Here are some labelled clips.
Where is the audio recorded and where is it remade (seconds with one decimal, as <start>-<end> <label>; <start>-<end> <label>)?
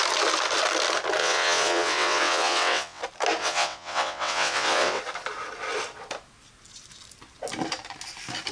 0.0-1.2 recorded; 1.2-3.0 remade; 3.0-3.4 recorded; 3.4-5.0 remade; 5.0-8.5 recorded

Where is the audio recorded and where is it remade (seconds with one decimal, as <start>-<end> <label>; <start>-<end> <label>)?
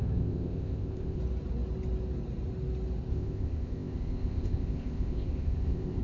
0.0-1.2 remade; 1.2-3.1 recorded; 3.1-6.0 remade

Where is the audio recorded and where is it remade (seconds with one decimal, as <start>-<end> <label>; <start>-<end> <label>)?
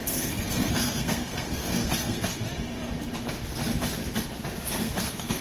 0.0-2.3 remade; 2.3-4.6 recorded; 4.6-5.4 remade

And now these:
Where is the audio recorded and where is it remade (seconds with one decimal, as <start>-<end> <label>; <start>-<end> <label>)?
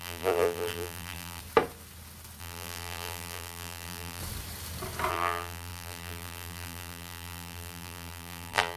0.0-1.4 remade; 1.4-2.4 recorded; 2.4-4.2 remade; 4.2-5.1 recorded; 5.1-8.8 remade